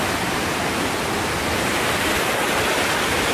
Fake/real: real